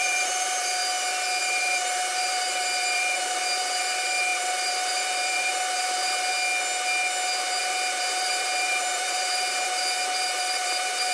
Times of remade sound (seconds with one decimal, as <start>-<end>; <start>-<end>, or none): 0.0-0.8; 1.4-6.3; 7.6-11.1